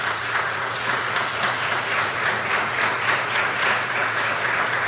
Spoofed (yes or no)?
yes